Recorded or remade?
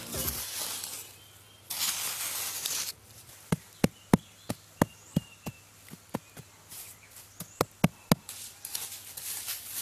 recorded